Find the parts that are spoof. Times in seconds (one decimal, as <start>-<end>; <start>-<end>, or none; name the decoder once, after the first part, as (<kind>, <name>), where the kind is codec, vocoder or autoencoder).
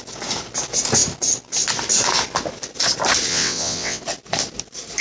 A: 3.3-4.0 (vocoder, WaveNeXt)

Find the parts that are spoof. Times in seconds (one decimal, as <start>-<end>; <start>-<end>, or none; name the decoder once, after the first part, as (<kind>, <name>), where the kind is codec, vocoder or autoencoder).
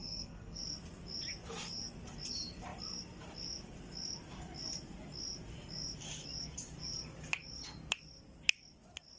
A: 0.0-0.6 (codec, SNAC)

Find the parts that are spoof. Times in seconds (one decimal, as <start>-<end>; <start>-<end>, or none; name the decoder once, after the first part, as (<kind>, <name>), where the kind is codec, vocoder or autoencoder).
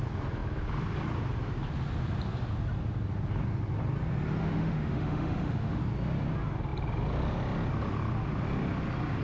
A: 4.4-5.8 (autoencoder, DAC-VAE)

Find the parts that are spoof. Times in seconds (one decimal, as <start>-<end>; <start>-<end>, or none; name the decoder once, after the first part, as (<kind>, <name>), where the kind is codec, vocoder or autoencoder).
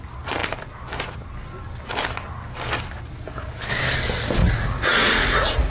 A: 4.4-5.7 (vocoder, Vocos)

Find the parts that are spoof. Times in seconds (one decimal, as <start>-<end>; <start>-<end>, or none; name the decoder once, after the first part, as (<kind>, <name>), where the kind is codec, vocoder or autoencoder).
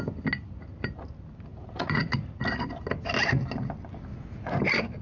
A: 1.5-2.1 (vocoder, Vocos); 4.1-4.6